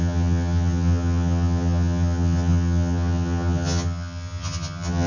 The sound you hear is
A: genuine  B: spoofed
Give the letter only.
B